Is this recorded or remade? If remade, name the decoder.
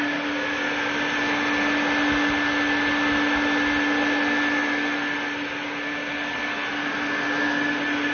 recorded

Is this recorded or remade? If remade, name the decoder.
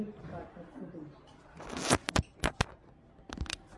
recorded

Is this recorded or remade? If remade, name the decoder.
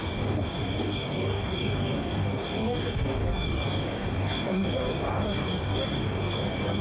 remade, codec, DAC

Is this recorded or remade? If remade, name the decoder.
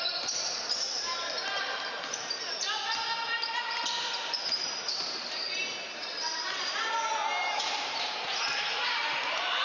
remade, vocoder, BigVGAN v2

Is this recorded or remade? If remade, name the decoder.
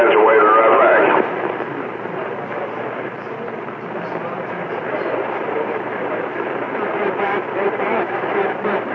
remade, vocoder, BigVGAN v2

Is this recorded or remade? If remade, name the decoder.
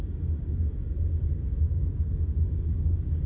remade, codec, DAC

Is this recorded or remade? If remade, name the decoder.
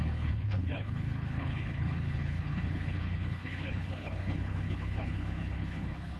remade, codec, HILCodec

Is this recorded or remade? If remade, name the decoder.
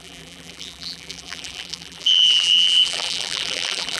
remade, vocoder, BigVGAN v2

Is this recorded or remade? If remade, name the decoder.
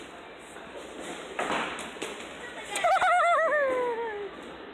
recorded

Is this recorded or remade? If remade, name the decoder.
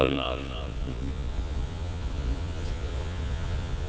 remade, vocoder, Vocos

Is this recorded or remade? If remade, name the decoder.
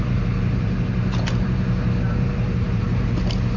remade, vocoder, BigVGAN v2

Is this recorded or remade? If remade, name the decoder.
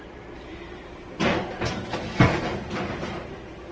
recorded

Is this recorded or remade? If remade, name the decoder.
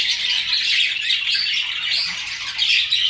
recorded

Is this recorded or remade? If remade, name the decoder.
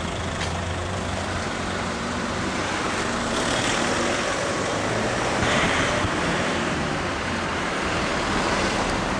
remade, vocoder, BigVGAN v2